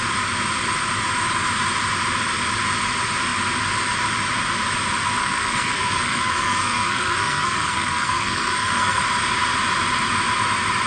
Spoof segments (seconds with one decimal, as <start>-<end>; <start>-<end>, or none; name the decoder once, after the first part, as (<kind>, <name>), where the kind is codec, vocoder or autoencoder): 5.2-9.0 (codec, SNAC)